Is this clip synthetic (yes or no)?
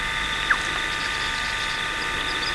no